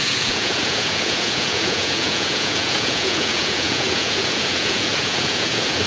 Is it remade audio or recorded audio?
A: remade